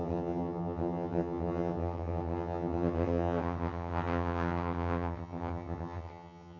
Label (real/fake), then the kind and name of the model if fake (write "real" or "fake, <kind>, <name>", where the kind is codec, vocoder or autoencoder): fake, vocoder, HiFi-GAN